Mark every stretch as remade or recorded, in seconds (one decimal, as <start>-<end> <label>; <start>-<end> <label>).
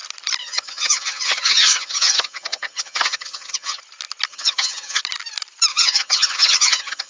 0.0-0.4 recorded; 0.4-3.8 remade; 3.8-4.3 recorded; 4.3-5.0 remade; 5.0-5.7 recorded; 5.7-7.1 remade